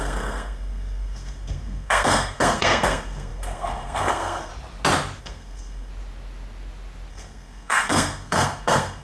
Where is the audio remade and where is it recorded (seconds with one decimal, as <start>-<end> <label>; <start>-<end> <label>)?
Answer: 0.0-4.5 remade; 4.5-5.2 recorded; 5.2-5.9 remade; 5.9-7.1 recorded; 7.1-9.0 remade